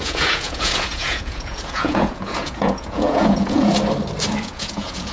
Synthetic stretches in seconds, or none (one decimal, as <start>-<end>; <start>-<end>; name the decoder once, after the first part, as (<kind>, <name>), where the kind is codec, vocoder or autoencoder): 0.0-3.7 (vocoder, Vocos); 4.4-5.1